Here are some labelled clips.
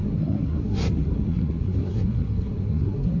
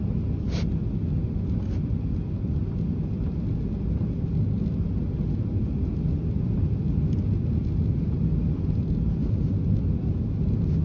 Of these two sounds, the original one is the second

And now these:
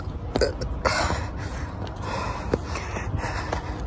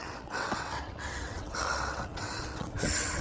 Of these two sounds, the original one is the first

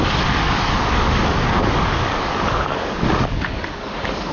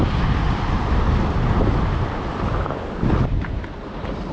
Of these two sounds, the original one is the second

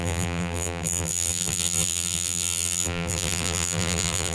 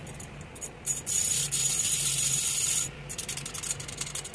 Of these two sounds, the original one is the second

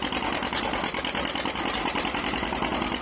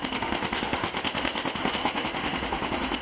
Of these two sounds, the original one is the first